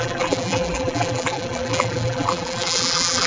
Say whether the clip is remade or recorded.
remade